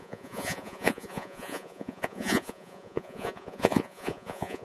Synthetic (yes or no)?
yes